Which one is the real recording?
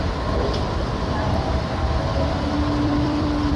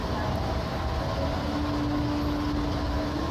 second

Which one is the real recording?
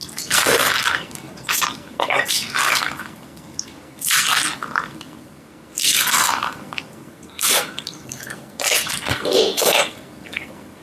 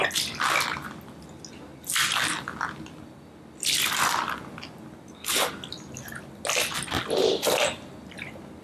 second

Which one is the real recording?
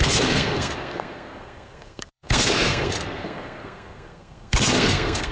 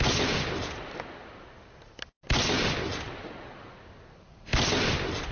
second